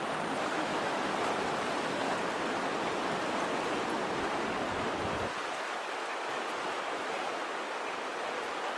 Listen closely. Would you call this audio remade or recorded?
recorded